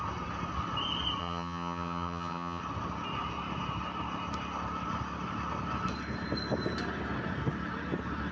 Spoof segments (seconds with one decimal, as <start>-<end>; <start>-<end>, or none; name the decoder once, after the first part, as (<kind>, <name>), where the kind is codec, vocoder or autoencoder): 1.2-2.6 (vocoder, HiFi-GAN)